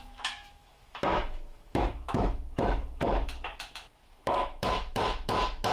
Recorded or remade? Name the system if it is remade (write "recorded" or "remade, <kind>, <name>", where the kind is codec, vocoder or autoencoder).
remade, autoencoder, DAC-VAE